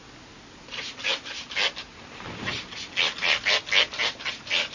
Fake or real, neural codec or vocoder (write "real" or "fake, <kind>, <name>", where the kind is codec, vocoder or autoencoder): real